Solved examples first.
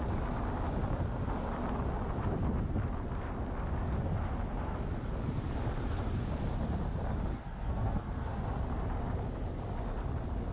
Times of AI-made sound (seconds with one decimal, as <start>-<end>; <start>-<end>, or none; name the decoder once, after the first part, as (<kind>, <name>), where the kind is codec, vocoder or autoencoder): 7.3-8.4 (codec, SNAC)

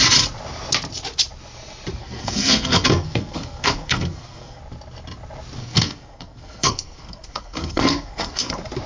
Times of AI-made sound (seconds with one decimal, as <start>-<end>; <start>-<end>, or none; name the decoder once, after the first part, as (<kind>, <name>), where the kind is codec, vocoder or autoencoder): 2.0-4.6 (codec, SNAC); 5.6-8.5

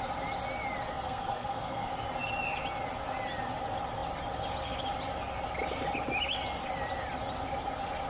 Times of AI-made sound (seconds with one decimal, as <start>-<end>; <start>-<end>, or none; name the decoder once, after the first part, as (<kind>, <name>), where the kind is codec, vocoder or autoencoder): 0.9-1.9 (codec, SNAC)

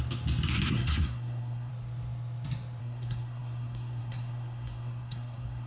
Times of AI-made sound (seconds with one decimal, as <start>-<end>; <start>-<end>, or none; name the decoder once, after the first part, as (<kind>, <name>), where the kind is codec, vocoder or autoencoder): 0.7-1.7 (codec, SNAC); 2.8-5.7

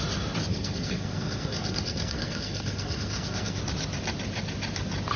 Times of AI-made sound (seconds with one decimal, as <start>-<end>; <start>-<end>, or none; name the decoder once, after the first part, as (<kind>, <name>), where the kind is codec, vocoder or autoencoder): 0.5-3.6 (codec, SNAC)

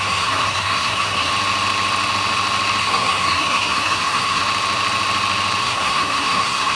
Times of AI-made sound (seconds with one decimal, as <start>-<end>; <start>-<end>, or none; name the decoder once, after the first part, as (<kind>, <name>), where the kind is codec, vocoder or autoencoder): 0.0-1.3 (codec, SNAC); 2.8-4.4; 5.6-6.8